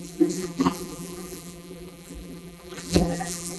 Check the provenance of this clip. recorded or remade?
remade